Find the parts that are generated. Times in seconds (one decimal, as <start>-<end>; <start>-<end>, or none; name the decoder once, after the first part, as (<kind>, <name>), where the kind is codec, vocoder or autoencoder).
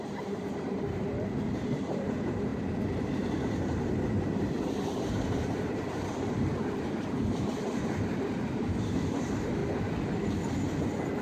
0.0-9.6 (vocoder, BigVGAN v2)